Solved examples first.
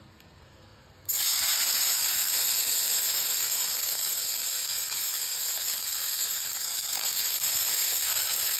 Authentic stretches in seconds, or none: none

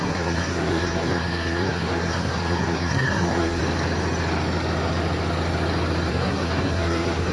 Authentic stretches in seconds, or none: 3.6-6.1